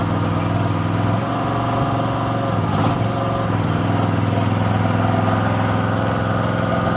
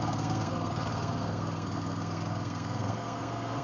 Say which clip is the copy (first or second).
second